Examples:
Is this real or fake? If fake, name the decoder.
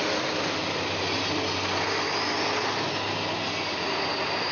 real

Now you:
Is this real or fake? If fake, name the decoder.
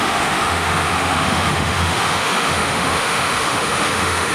fake, autoencoder, DAC-VAE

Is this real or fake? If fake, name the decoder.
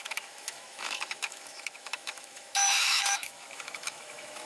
fake, autoencoder, DAC-VAE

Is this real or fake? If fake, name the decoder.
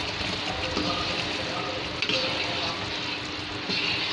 real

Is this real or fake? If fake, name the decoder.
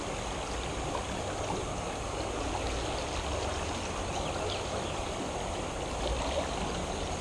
real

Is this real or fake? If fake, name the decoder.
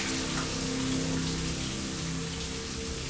real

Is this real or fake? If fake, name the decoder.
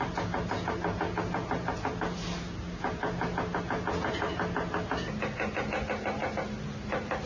real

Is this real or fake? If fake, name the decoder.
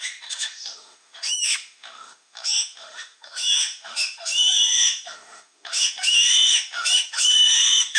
fake, autoencoder, DAC-VAE